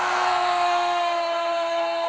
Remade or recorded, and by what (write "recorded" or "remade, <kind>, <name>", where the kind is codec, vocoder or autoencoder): remade, codec, SNAC